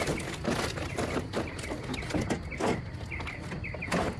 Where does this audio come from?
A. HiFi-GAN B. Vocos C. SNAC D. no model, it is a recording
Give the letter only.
D